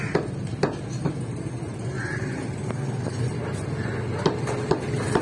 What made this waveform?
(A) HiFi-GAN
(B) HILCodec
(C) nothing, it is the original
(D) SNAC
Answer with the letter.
C